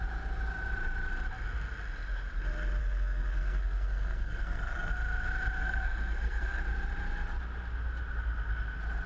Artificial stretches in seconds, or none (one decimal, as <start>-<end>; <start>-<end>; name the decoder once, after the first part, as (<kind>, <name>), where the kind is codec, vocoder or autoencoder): 2.8-4.9 (codec, SNAC); 5.6-6.6